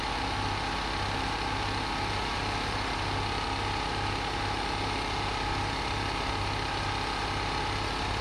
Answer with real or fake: real